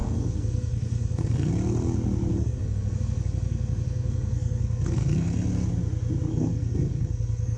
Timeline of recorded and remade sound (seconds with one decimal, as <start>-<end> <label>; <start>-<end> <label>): 0.0-1.5 remade; 1.5-2.3 recorded; 2.3-5.5 remade; 5.5-6.3 recorded; 6.3-7.6 remade